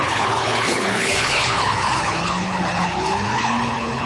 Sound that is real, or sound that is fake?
fake